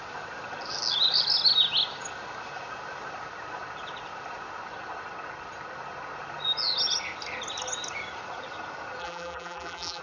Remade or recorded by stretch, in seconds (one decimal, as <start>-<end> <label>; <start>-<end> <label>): 0.0-9.0 recorded; 9.0-10.0 remade